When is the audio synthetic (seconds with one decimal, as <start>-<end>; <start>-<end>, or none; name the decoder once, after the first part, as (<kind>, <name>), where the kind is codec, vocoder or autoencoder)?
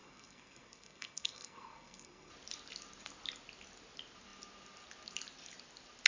0.0-2.3 (codec, SNAC)